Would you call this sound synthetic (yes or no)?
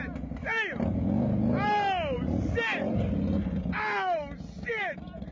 no